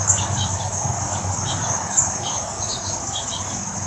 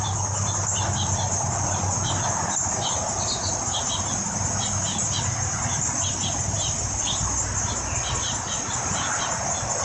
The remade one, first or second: first